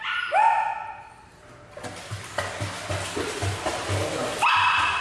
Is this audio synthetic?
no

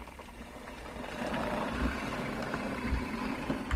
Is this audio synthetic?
yes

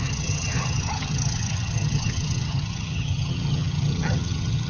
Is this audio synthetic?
yes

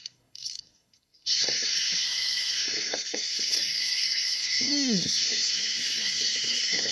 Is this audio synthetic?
yes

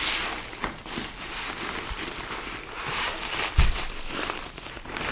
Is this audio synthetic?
no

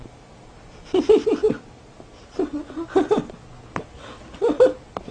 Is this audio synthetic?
no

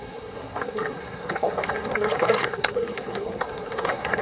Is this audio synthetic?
yes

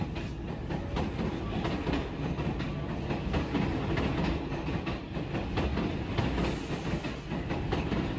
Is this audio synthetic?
no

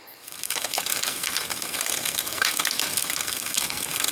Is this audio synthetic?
yes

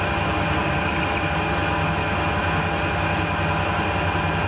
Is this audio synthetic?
no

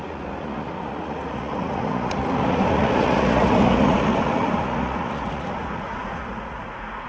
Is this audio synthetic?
yes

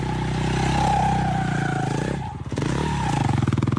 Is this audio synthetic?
no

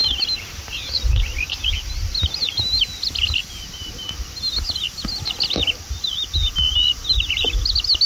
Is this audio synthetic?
no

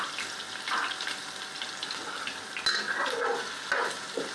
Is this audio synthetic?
no